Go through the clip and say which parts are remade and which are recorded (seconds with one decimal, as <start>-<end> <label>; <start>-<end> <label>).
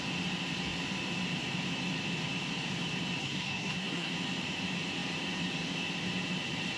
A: 0.0-3.2 recorded; 3.2-4.1 remade; 4.1-6.8 recorded